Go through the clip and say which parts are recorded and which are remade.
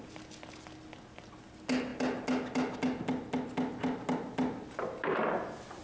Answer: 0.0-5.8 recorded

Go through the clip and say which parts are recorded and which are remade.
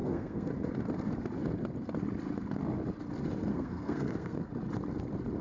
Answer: 0.0-0.5 remade; 0.5-3.5 recorded; 3.5-4.5 remade; 4.5-5.4 recorded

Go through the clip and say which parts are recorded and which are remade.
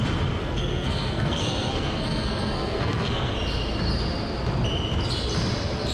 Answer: 0.0-0.4 recorded; 0.4-3.3 remade; 3.3-5.9 recorded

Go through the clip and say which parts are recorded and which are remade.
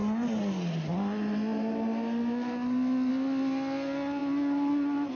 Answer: 0.0-5.1 recorded